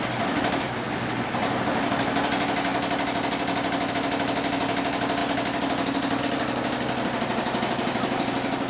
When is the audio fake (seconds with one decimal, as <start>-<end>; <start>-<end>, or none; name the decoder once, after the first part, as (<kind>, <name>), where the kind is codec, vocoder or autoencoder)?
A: none